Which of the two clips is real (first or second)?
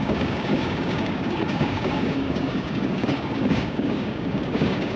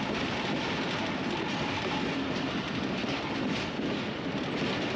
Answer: second